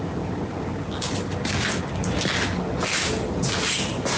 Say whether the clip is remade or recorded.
recorded